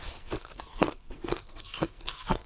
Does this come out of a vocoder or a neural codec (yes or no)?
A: yes